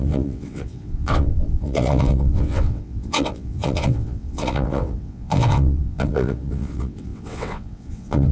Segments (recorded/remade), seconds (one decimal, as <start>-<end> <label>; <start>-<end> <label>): 0.0-8.3 remade

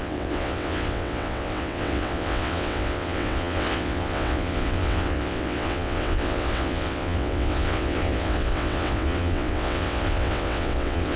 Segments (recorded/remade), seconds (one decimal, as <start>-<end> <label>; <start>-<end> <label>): 0.0-11.2 remade

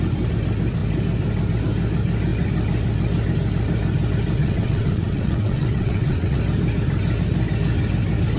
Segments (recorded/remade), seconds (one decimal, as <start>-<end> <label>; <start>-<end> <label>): 0.0-4.4 recorded; 4.4-6.4 remade; 6.4-8.4 recorded

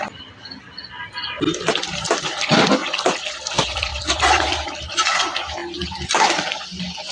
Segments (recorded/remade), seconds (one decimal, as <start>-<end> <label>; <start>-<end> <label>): 0.0-7.1 recorded

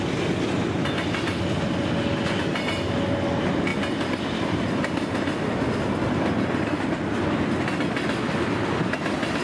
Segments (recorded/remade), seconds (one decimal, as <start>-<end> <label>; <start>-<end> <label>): 0.0-9.4 recorded

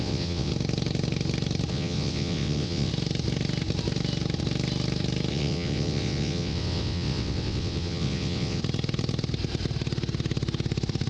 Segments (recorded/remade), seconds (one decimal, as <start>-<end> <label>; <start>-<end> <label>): 0.0-0.5 remade; 0.5-1.7 recorded; 1.7-2.9 remade; 2.9-5.3 recorded; 5.3-8.6 remade; 8.6-11.1 recorded

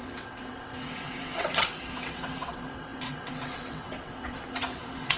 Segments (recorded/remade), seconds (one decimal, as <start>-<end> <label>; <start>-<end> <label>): 0.0-5.2 remade

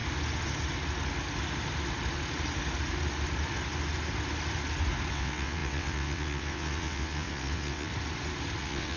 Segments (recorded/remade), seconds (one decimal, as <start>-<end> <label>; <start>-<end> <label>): 0.0-5.1 recorded; 5.1-7.9 remade; 7.9-8.6 recorded; 8.6-9.0 remade